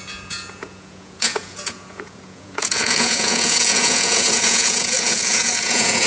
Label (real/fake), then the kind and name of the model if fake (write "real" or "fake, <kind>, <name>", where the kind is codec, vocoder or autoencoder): fake, vocoder, Vocos